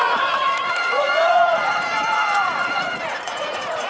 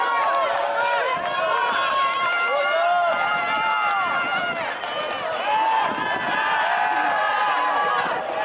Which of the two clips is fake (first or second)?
first